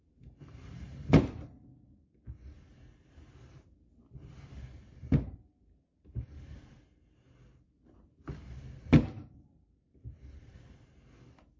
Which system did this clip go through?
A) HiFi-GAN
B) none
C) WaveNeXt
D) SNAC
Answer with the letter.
B